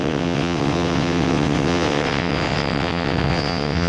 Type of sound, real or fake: fake